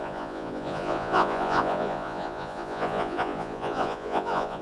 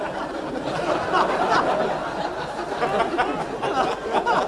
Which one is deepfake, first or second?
first